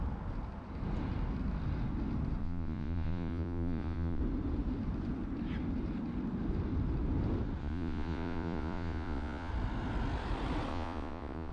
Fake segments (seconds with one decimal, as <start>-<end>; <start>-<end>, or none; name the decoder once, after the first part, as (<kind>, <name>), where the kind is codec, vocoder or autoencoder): 2.4-4.2 (vocoder, Vocos); 7.6-9.5; 10.7-11.5